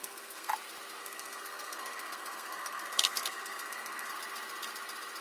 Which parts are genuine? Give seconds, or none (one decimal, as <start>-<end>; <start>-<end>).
0.5-1.0; 4.1-5.2